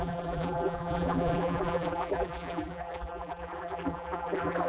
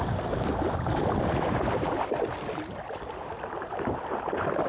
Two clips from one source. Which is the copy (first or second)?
first